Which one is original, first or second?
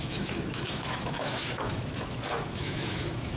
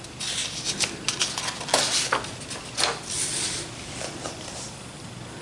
second